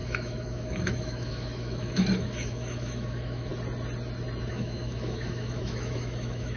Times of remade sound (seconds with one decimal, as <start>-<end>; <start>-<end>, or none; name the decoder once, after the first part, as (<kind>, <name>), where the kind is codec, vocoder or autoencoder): 0.0-3.5 (autoencoder, DAC-VAE); 4.5-6.6